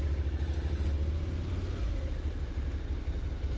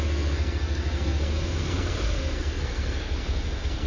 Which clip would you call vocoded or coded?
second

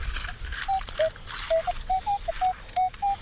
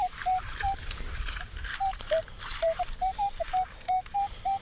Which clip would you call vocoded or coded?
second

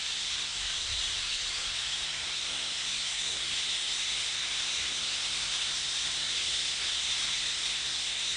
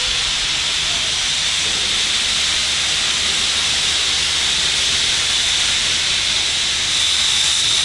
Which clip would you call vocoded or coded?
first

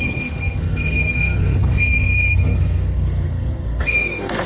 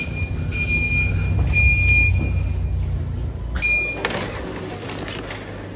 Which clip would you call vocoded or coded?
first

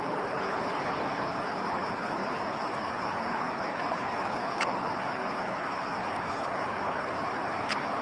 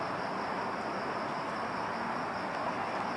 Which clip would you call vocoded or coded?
first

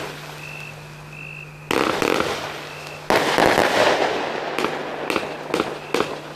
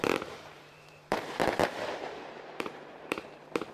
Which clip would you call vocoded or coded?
second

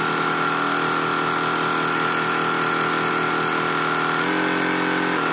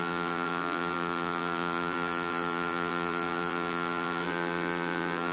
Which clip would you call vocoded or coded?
second